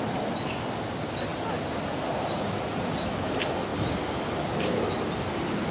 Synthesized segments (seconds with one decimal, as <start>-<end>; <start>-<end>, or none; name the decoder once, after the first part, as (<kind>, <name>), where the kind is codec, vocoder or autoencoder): none